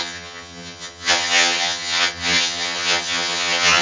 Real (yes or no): no